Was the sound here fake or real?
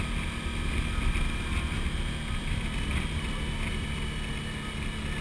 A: real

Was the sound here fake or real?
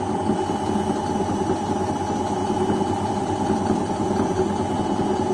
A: real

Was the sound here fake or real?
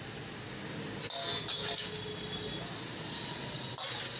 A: real